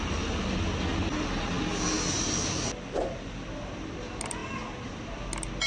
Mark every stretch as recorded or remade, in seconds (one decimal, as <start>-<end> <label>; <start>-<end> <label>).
0.0-5.7 recorded